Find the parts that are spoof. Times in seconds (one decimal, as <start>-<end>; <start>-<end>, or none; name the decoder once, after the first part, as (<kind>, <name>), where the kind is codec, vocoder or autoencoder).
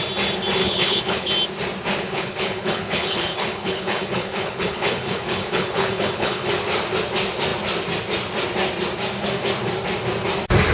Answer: 0.6-1.3 (codec, HILCodec); 2.0-6.5